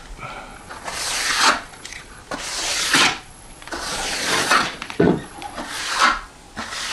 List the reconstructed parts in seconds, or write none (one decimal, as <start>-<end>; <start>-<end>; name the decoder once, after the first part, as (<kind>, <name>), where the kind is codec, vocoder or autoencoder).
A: 0.5-2.2 (vocoder, Vocos); 2.7-5.8